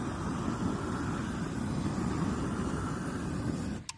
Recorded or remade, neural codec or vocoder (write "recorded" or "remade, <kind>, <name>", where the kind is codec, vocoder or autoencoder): recorded